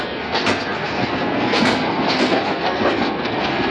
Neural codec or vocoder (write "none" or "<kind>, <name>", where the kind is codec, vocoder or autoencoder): codec, SNAC